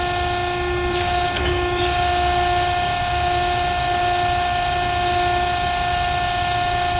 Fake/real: real